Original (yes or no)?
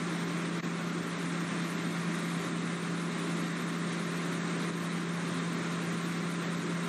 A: yes